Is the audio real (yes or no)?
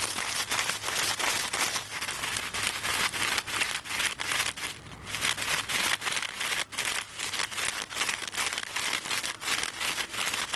yes